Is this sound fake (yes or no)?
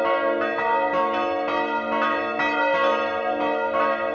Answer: no